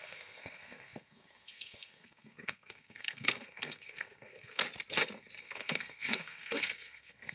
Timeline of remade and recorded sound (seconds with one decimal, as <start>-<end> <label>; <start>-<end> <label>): 0.0-4.6 remade; 4.6-5.4 recorded; 5.4-7.3 remade